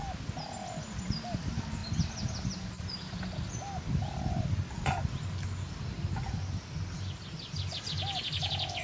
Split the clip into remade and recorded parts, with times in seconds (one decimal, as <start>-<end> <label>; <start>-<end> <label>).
0.0-8.8 recorded